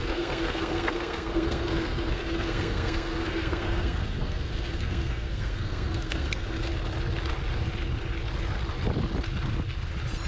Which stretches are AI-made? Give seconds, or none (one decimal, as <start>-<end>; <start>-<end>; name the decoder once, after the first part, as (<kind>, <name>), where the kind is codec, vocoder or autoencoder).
0.0-6.7 (codec, SNAC)